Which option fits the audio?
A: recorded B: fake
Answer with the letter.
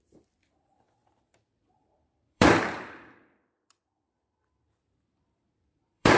B